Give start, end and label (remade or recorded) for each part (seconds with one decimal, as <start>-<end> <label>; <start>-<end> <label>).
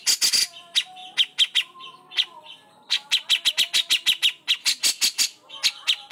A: 0.0-6.1 recorded